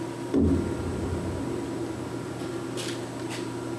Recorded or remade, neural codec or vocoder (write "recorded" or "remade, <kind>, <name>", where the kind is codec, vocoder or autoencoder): recorded